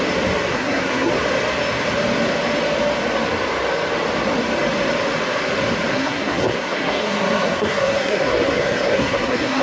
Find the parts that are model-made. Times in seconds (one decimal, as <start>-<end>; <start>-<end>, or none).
0.5-1.1; 5.9-9.6